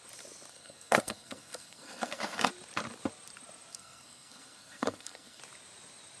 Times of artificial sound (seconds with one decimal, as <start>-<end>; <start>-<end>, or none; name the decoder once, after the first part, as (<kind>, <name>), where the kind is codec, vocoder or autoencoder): 0.5-2.5 (codec, SNAC); 3.7-5.4